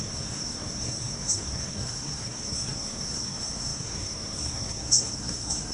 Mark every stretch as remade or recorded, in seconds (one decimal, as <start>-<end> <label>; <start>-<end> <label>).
0.0-5.7 remade